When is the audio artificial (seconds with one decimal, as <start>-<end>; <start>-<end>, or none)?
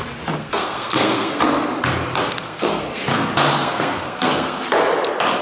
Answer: 0.4-1.4; 2.3-3.0; 3.5-4.6